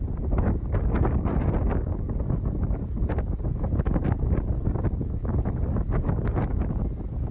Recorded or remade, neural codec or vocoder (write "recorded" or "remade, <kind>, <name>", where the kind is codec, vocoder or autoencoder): recorded